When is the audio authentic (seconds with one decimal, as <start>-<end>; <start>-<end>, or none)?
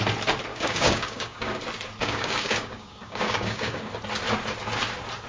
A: 0.0-0.5; 1.6-2.0; 3.9-5.3